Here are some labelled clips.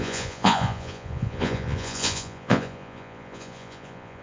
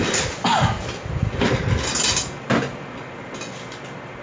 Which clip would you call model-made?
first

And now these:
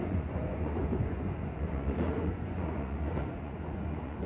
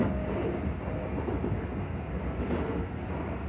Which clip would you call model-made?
first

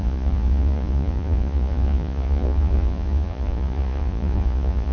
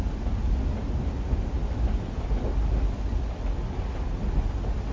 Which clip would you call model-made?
first